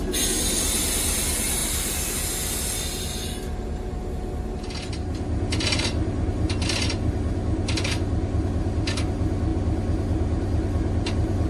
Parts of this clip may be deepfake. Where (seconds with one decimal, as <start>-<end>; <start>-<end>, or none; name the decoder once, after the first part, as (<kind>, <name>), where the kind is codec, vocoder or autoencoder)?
none